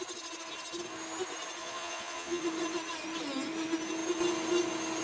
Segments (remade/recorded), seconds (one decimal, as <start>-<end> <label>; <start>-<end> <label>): 0.0-1.6 recorded; 1.6-2.4 remade; 2.4-5.0 recorded